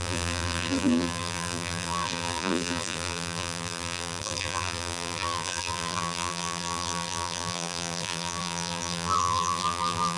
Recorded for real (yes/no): no